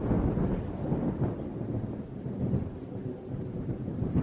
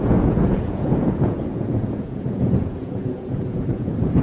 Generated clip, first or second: second